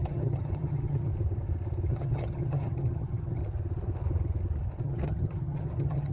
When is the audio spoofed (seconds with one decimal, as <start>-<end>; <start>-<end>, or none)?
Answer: 0.0-1.1; 1.9-3.4; 4.8-6.1